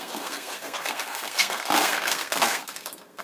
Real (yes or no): no